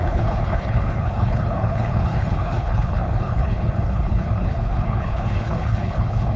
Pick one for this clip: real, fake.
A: fake